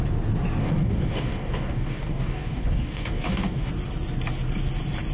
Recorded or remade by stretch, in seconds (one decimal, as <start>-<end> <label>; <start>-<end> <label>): 0.0-0.6 recorded; 0.6-3.7 remade; 3.7-5.1 recorded